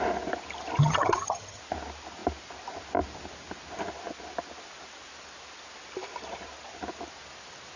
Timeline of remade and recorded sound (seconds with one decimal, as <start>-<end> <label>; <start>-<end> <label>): 0.0-0.8 recorded; 0.8-1.6 remade; 1.6-7.8 recorded